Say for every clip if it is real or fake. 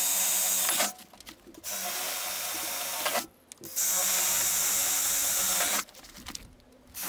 real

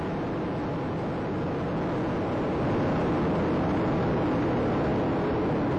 real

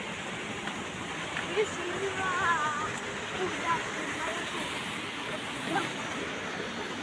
real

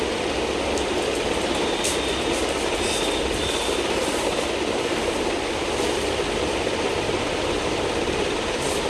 real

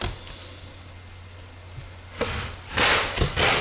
real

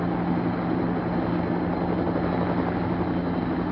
real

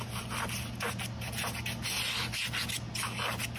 real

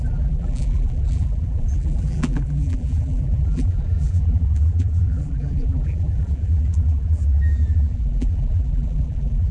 fake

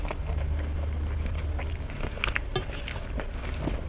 real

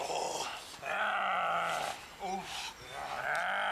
real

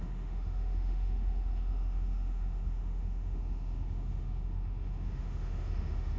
fake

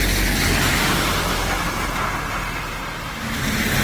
real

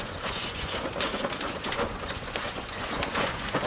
fake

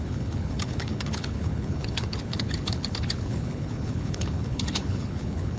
fake